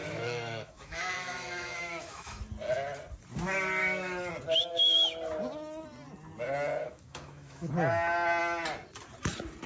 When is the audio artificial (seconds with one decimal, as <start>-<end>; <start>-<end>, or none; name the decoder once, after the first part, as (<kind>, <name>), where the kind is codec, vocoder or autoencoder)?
0.0-2.4 (autoencoder, DAC-VAE); 3.8-4.3; 6.8-7.7